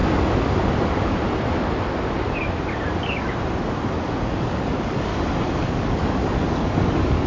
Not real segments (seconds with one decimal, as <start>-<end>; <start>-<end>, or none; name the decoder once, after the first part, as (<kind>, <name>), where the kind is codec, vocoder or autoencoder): 4.4-5.1 (codec, DAC); 5.6-7.3

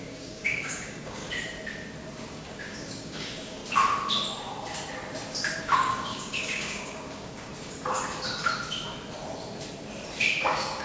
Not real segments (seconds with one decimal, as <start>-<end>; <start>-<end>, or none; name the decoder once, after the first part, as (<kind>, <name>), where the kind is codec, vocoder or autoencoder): 0.0-1.2 (codec, DAC); 2.3-3.6; 5.6-7.5; 10.2-10.8

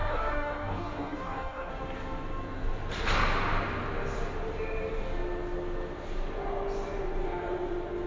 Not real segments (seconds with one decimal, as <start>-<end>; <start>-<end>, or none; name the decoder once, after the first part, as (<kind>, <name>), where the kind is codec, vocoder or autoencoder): 0.0-1.7 (codec, DAC)

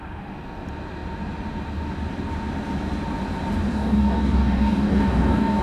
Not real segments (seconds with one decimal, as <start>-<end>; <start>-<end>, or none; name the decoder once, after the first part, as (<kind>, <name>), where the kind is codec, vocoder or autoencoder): 3.7-5.6 (codec, DAC)